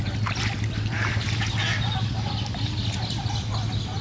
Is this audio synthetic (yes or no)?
no